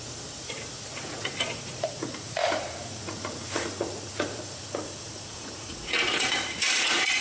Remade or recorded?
remade